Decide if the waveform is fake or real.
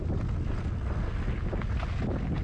real